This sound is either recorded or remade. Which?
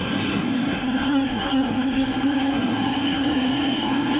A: remade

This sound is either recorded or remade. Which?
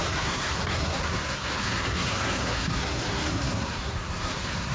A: remade